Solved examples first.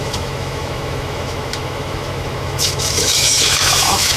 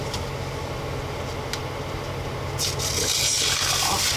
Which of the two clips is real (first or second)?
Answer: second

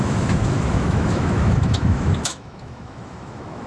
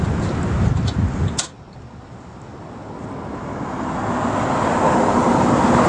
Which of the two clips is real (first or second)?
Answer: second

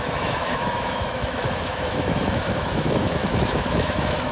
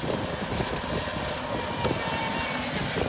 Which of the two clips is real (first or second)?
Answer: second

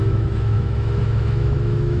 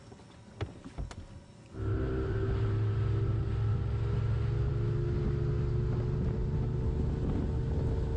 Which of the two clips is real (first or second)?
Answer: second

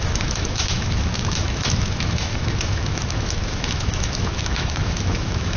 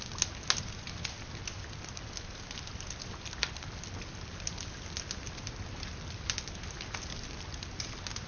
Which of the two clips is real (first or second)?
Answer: second